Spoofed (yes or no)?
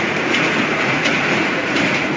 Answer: yes